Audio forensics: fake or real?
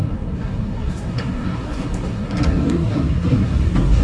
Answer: fake